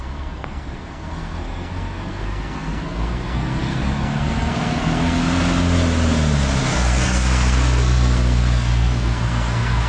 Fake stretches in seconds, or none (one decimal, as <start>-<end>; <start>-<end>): 0.0-5.2; 6.6-9.9